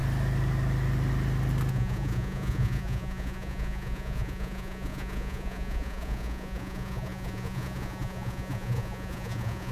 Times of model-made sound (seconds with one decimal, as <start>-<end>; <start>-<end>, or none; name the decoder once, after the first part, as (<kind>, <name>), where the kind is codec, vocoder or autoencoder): 1.7-9.7 (vocoder, Vocos)